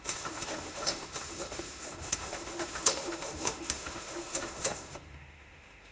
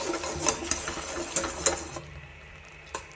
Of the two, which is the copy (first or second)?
first